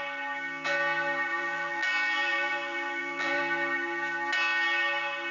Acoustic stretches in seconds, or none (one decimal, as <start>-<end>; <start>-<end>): 0.0-1.3; 3.4-5.3